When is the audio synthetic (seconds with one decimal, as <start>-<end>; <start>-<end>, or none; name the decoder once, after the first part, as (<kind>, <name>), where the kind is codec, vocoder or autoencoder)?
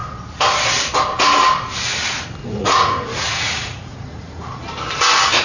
2.4-4.6 (vocoder, Vocos)